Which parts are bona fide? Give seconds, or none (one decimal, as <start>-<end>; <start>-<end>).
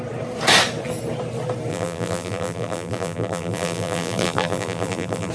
0.0-1.7